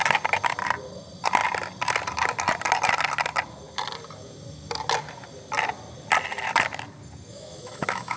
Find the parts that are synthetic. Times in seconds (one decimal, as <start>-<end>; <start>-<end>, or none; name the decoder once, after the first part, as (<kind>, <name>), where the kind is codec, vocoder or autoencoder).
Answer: 7.3-8.2 (autoencoder, DAC-VAE)